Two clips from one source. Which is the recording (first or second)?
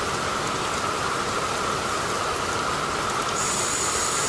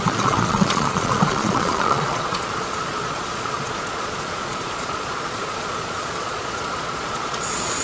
first